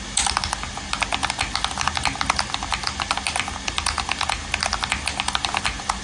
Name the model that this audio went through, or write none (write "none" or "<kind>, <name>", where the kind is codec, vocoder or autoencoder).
none